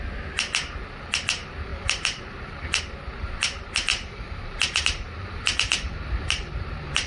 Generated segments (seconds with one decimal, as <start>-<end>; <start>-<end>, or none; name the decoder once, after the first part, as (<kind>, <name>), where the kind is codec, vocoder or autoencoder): 1.7-2.8 (vocoder, BigVGAN v2); 3.9-7.1